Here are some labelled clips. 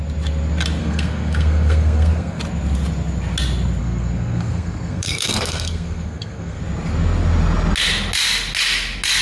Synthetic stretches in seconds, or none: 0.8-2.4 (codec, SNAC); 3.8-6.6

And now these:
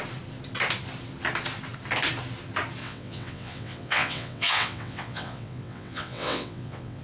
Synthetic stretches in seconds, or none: 2.8-7.0 (vocoder, WaveNeXt)

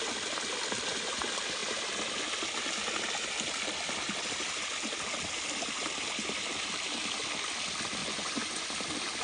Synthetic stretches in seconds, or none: 8.0-8.7 (vocoder, Vocos)

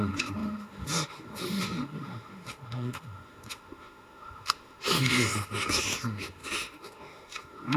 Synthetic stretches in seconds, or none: 0.0-7.8 (autoencoder, DAC-VAE)